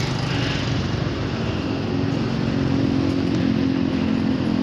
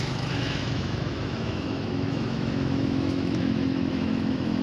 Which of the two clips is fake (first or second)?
second